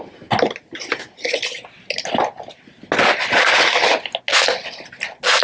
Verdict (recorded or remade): recorded